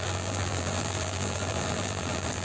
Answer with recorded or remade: remade